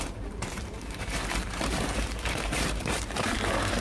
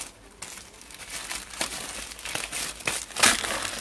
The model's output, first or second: first